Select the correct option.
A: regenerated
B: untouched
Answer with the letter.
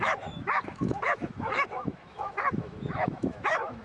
A